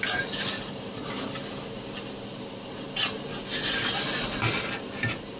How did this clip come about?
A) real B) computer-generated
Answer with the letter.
A